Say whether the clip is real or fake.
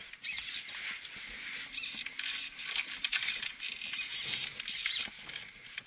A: real